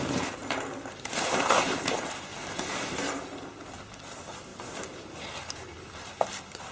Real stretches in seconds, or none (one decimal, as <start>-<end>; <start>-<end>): 0.4-0.9